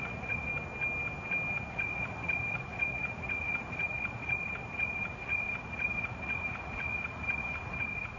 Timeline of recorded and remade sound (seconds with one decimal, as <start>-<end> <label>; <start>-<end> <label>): 0.0-0.5 remade; 0.5-1.7 recorded; 1.7-8.2 remade

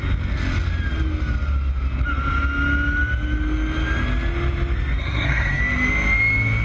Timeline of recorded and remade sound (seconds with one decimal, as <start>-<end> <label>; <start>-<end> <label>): 0.0-5.0 recorded; 5.0-5.6 remade; 5.6-6.6 recorded

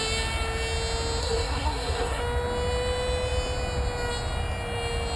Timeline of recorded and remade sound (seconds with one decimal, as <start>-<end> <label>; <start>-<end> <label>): 0.0-1.2 recorded; 1.2-2.2 remade; 2.2-5.2 recorded

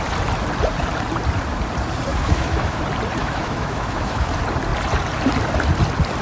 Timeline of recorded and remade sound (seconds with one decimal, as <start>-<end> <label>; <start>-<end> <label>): 0.0-2.1 recorded; 2.1-2.8 remade; 2.8-3.2 recorded; 3.2-4.3 remade; 4.3-6.2 recorded

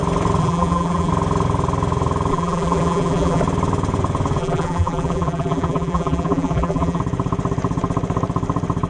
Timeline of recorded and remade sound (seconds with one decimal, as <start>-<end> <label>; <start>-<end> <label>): 0.0-0.4 recorded; 0.4-1.1 remade; 1.1-2.3 recorded; 2.3-3.4 remade; 3.4-4.4 recorded; 4.4-7.0 remade; 7.0-8.9 recorded

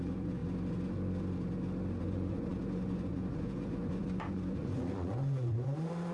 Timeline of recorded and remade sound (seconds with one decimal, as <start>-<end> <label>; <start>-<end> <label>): 0.0-0.4 remade; 0.4-2.0 recorded; 2.0-6.1 remade